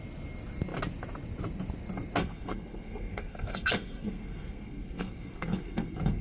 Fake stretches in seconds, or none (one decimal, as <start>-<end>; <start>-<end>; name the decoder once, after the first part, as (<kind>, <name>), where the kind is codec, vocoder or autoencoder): 2.2-6.2 (codec, SNAC)